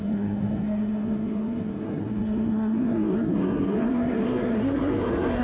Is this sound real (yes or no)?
no